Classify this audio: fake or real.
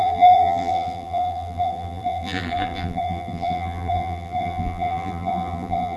fake